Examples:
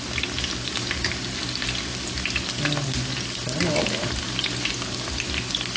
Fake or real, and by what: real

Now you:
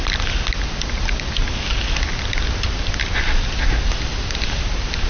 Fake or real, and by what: real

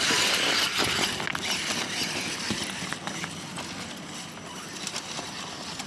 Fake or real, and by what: real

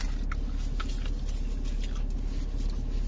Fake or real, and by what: real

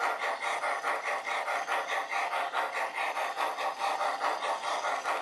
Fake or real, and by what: real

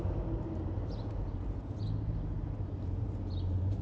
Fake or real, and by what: real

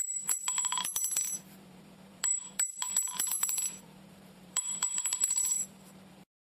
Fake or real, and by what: fake, vocoder, BigVGAN v2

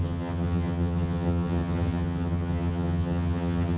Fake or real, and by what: fake, vocoder, HiFi-GAN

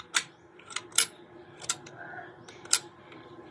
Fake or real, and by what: real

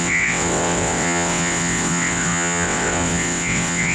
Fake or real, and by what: fake, vocoder, WaveNeXt